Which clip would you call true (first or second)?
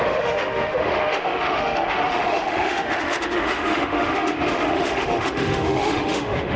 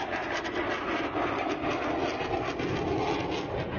second